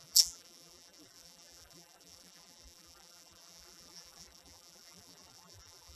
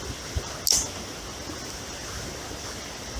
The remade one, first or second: first